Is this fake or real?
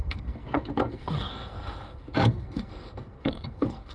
fake